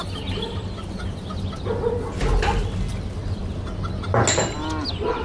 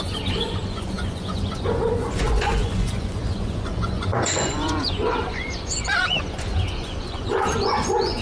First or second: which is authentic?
first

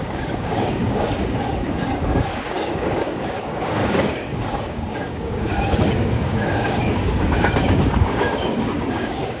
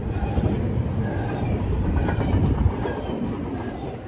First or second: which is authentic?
second